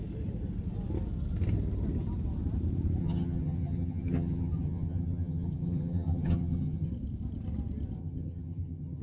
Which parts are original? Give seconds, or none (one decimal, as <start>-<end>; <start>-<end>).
0.0-3.0; 6.9-8.0